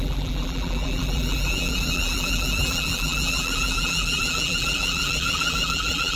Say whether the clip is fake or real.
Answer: fake